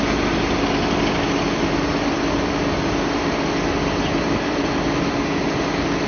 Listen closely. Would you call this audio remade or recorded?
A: recorded